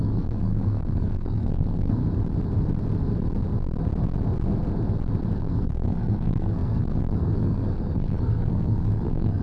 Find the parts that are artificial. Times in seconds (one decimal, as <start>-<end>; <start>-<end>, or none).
0.0-2.0; 5.3-9.4